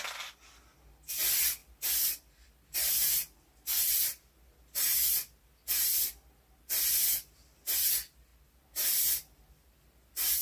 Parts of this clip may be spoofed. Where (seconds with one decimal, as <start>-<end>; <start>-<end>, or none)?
none